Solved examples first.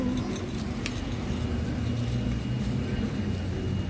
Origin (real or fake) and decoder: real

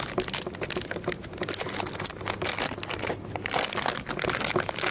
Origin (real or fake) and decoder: real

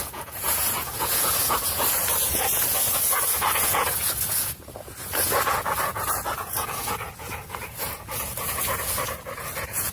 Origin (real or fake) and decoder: fake, vocoder, Vocos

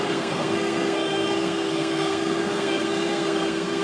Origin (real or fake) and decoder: fake, codec, SNAC